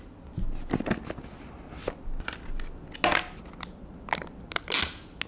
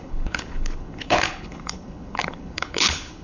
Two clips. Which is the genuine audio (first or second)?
first